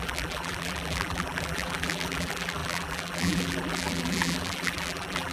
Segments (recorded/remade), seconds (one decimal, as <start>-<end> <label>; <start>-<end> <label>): 0.0-5.3 remade